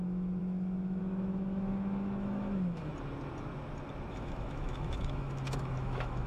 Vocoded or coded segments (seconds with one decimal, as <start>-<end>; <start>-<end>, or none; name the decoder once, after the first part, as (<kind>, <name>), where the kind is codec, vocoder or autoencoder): 0.0-2.9 (autoencoder, DAC-VAE); 4.1-6.3